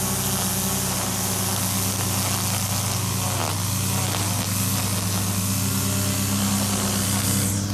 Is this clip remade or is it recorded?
recorded